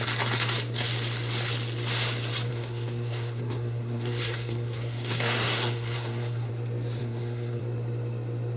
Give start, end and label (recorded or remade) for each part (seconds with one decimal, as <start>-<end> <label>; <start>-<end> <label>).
0.0-2.5 recorded; 2.5-6.5 remade; 6.5-7.0 recorded; 7.0-7.6 remade; 7.6-8.6 recorded